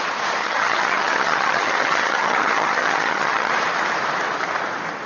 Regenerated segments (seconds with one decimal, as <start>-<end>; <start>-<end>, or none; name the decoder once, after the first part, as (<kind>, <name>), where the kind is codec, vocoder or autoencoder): 0.4-3.5 (vocoder, HiFi-GAN)